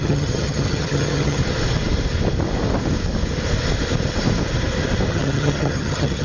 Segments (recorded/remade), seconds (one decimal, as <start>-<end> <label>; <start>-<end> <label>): 0.0-1.4 remade; 1.4-5.1 recorded; 5.1-6.2 remade